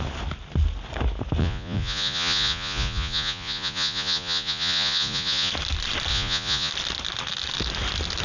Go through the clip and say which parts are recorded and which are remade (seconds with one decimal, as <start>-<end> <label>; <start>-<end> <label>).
0.0-1.4 recorded; 1.4-5.5 remade; 5.5-6.1 recorded; 6.1-6.7 remade; 6.7-8.2 recorded